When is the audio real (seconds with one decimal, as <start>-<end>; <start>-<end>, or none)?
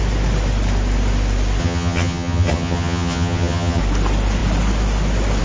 0.0-1.6; 3.8-5.4